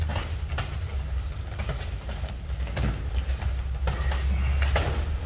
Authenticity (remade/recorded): recorded